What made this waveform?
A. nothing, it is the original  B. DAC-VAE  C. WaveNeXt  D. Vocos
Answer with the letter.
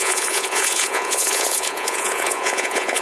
D